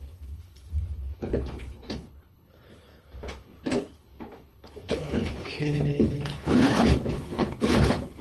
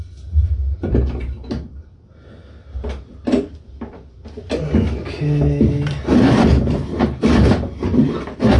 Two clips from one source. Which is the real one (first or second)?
second